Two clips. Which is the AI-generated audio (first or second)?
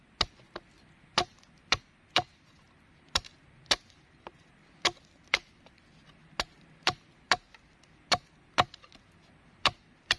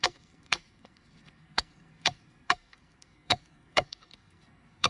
second